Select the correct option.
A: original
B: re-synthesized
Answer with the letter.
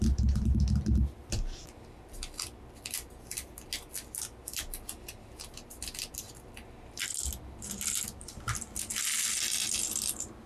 A